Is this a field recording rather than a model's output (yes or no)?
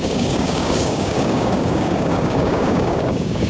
no